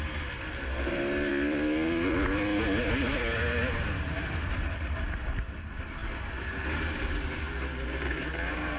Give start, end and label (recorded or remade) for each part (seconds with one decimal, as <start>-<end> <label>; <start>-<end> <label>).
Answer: 0.0-8.8 recorded